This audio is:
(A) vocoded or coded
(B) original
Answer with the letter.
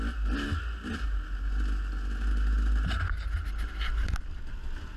B